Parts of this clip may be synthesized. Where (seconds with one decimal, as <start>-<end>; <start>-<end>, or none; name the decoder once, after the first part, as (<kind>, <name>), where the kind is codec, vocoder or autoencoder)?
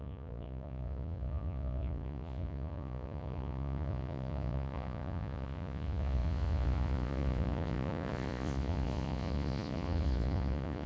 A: 0.0-10.9 (vocoder, Vocos)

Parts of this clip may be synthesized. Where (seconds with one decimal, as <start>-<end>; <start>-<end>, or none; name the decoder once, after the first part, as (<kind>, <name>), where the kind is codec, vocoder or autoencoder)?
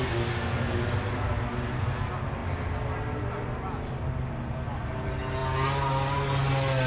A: none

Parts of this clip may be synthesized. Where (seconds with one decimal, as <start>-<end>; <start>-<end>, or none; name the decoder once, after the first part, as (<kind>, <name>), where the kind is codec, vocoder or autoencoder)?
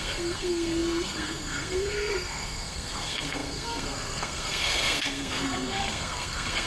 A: 0.0-6.7 (codec, SNAC)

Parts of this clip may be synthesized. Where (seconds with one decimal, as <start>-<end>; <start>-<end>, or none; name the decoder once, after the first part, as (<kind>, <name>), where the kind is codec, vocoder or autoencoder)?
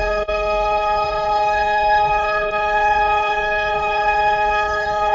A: 0.0-5.1 (codec, HILCodec)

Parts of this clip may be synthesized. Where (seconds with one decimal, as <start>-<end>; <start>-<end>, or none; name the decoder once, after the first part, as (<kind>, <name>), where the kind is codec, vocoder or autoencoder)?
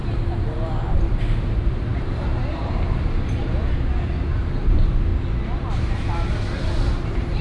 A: 1.0-5.1 (vocoder, BigVGAN v2); 5.6-7.4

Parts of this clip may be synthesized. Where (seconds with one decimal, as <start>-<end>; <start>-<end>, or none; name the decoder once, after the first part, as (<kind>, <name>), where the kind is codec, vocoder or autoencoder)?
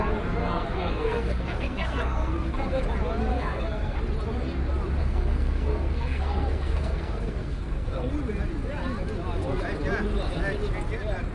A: 0.4-2.8 (codec, SNAC); 3.3-4.0; 5.0-8.1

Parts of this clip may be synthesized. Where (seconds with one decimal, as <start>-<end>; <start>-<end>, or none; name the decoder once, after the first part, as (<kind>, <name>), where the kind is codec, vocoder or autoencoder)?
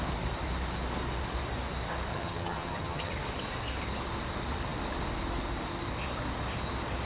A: 2.1-3.1 (vocoder, HiFi-GAN)